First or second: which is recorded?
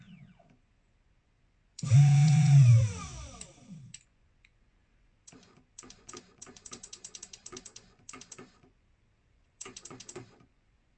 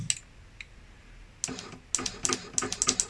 second